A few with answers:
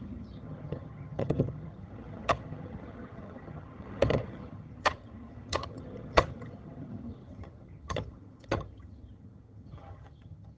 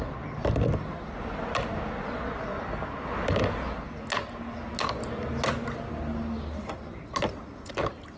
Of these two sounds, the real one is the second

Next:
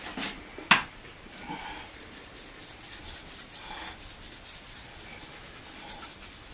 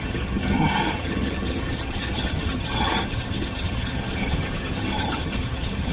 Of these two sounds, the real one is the first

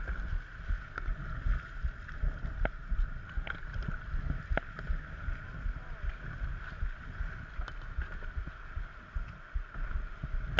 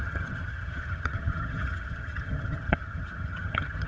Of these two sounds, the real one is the first